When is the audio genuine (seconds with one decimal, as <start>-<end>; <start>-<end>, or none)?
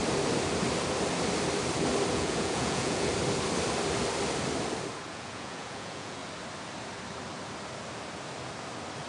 0.0-2.1; 3.1-5.1; 6.2-9.1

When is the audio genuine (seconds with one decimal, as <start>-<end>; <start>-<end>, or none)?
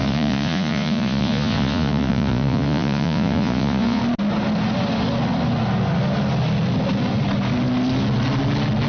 4.0-8.9